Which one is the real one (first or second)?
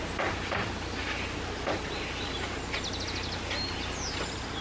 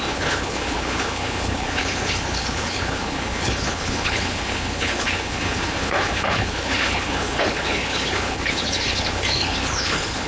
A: first